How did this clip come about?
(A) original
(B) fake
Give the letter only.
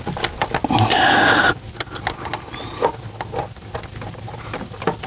A